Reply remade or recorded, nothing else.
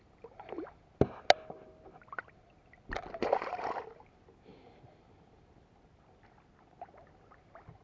recorded